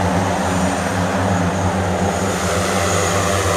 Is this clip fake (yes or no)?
no